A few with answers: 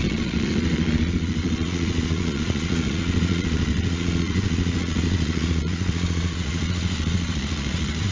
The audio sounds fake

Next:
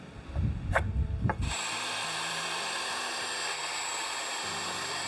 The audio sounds fake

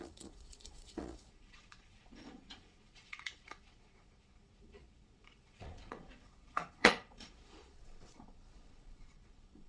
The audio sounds fake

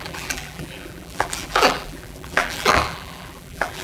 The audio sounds fake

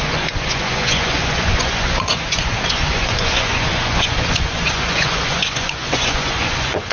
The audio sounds fake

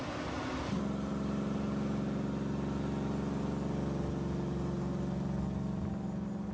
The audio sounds real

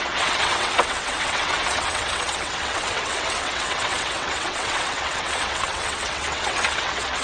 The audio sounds fake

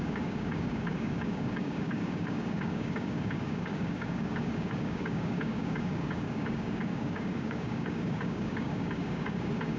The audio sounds fake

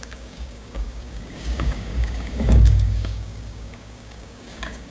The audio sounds fake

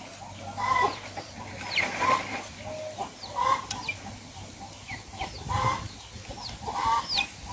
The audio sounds real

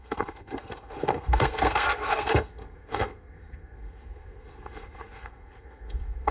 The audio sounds fake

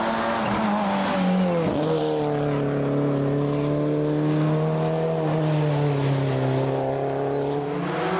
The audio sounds real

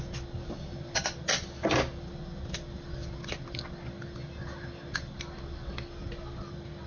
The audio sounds real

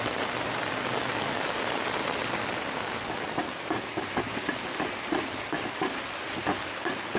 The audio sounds real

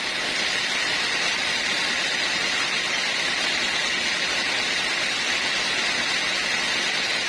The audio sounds real